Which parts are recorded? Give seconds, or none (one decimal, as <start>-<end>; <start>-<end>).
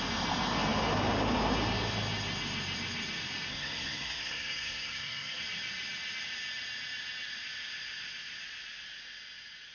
0.0-3.5; 5.4-9.7